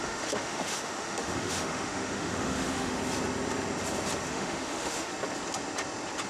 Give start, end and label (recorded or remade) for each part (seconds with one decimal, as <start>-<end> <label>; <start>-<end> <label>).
0.0-3.0 remade; 3.0-4.3 recorded; 4.3-5.1 remade; 5.1-6.3 recorded